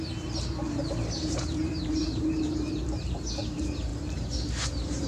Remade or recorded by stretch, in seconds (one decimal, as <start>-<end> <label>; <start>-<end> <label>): 0.0-5.1 remade